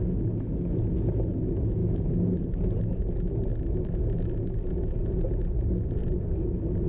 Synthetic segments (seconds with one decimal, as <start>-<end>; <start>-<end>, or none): none